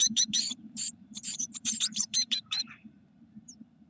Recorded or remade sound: remade